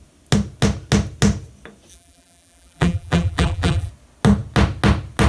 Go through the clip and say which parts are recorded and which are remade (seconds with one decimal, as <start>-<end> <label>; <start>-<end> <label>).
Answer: 0.0-1.9 recorded; 1.9-3.9 remade; 3.9-5.3 recorded